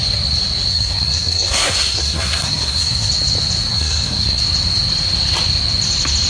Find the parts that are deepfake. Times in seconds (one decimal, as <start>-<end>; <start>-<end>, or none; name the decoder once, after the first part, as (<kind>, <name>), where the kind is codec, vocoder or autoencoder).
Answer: 0.7-3.1 (codec, SNAC); 3.7-4.4